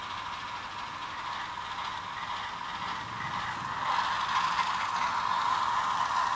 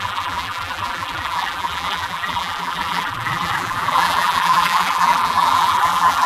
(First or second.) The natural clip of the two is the first